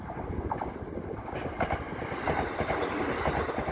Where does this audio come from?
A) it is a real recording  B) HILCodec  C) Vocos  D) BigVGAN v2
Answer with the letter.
A